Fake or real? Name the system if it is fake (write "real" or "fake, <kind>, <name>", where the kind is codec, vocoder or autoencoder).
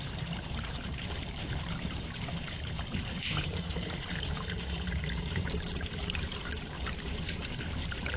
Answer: fake, vocoder, BigVGAN v2